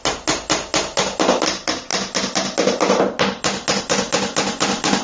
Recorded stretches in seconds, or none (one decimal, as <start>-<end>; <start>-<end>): 0.0-5.0